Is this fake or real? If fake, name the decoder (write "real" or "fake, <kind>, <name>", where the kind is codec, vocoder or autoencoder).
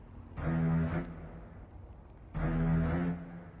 real